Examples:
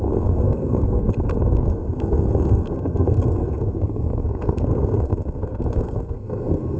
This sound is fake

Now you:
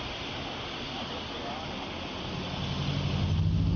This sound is real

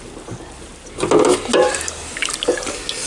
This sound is real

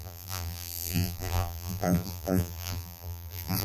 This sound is fake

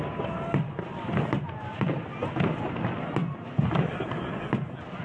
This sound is real